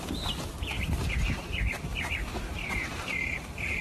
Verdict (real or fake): fake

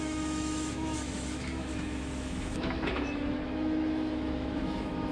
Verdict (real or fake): fake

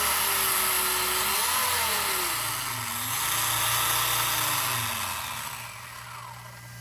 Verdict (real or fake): real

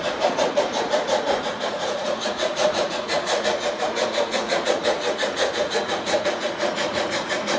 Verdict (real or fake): fake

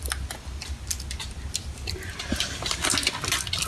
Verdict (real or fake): real